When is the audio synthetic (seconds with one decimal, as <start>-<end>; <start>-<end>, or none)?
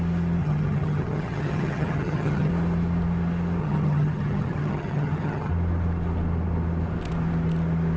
0.4-2.5; 3.6-5.5